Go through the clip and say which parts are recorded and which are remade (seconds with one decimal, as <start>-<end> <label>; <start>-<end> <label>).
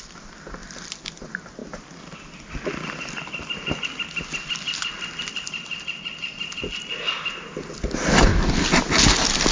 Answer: 0.0-8.3 remade; 8.3-9.5 recorded